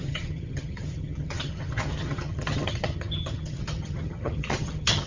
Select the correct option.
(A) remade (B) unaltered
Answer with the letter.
A